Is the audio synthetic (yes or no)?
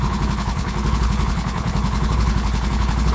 yes